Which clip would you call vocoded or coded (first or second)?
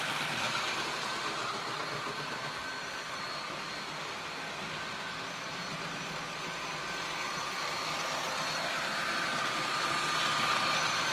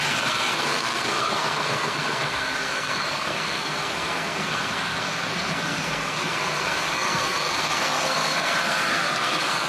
second